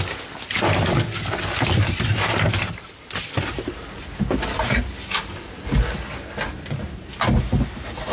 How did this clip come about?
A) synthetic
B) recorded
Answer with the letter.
B